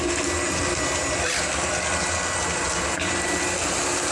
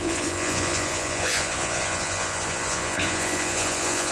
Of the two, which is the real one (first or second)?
first